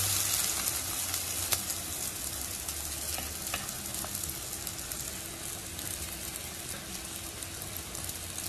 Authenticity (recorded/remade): recorded